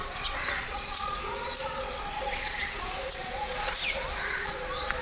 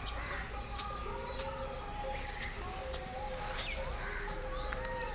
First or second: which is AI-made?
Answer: first